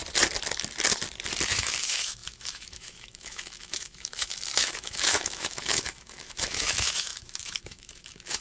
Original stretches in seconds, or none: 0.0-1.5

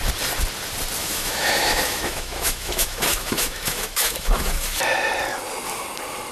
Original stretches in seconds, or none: 0.0-1.0; 4.8-6.3

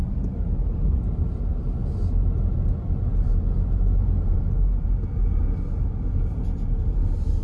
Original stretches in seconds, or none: 0.0-7.4

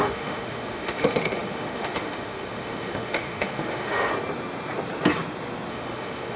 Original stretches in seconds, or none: 4.1-5.7

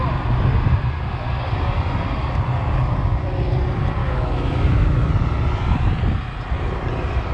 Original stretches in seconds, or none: 0.0-4.0; 5.1-7.3

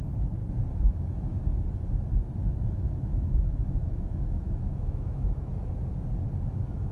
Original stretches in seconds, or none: 0.4-0.9; 1.5-2.6; 5.5-6.5

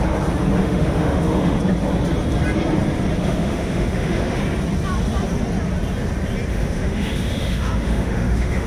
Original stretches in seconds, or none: 0.0-0.6; 1.6-3.2; 4.4-6.5